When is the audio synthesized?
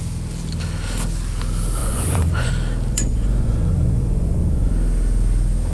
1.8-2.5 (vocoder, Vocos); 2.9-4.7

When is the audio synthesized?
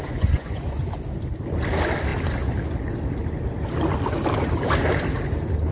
0.0-0.8 (vocoder, Vocos)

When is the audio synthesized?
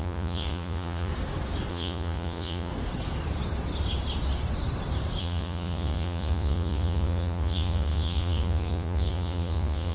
0.0-1.1 (vocoder, Vocos); 1.7-2.7; 5.2-9.9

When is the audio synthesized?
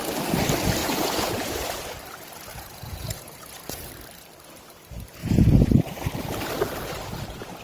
0.8-1.9 (vocoder, Vocos); 2.5-3.9; 5.2-5.8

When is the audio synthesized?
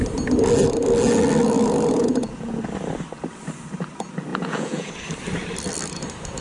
2.0-2.6 (vocoder, Vocos); 4.3-4.9